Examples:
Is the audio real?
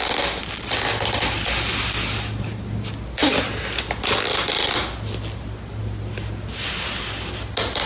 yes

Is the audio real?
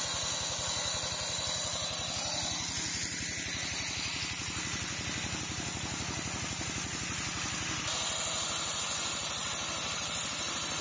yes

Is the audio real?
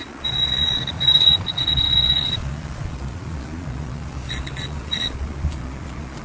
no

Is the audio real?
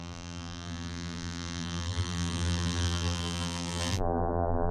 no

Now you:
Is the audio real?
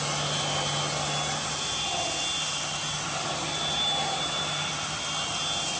yes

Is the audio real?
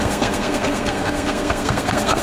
no